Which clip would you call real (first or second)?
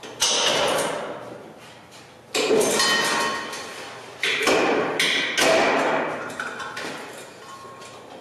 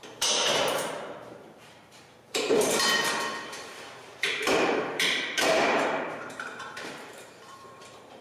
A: first